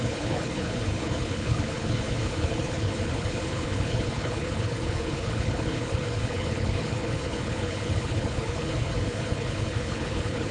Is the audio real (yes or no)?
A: no